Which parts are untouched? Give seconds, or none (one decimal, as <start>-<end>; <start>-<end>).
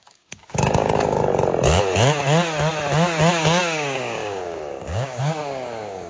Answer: 1.2-3.3